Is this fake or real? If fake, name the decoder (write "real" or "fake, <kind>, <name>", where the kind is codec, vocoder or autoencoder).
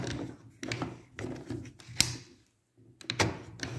real